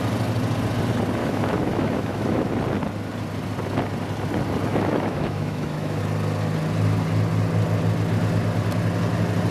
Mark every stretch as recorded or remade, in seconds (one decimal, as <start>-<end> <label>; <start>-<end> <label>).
0.0-1.2 recorded; 1.2-2.5 remade; 2.5-4.7 recorded; 4.7-6.0 remade; 6.0-9.5 recorded

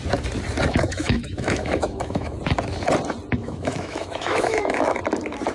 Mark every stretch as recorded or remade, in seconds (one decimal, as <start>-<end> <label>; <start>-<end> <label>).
0.0-0.7 recorded; 0.7-2.4 remade; 2.4-3.4 recorded; 3.4-5.0 remade; 5.0-5.5 recorded